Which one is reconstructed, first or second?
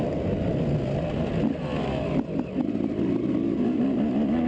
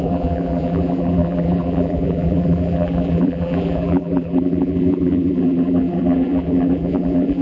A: second